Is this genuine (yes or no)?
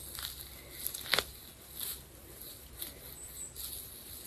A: yes